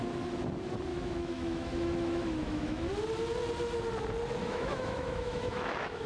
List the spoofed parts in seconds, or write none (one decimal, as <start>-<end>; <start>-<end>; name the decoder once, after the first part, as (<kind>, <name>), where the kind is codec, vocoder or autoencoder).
0.9-2.9 (autoencoder, DAC-VAE); 4.4-6.1